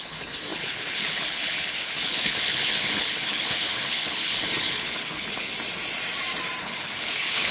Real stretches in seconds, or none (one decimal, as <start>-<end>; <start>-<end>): 5.5-6.6